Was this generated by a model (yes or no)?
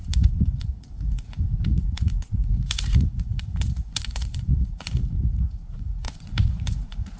yes